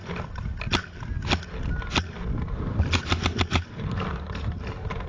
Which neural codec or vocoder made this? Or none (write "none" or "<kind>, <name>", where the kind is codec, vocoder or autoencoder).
none